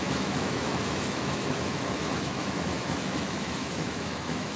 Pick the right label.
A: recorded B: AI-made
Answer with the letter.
B